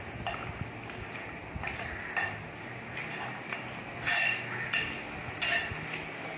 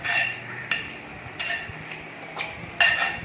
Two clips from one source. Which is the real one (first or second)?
first